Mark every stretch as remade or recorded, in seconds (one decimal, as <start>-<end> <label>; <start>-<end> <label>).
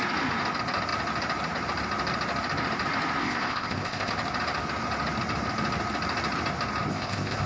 0.0-3.2 recorded; 3.2-4.1 remade; 4.1-6.9 recorded; 6.9-7.5 remade